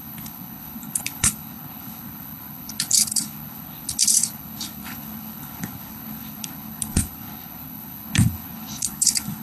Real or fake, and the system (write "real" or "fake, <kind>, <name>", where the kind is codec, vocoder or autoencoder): fake, codec, HILCodec